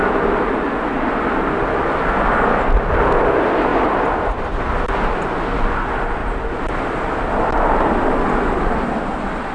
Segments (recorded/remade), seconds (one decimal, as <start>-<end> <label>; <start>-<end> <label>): 0.0-3.7 recorded; 3.7-4.8 remade; 4.8-6.2 recorded; 6.2-8.6 remade; 8.6-9.5 recorded